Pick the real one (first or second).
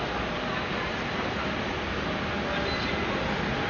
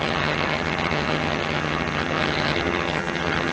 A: first